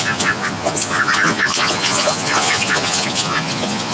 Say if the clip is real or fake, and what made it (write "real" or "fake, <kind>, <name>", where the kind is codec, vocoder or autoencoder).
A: fake, vocoder, Vocos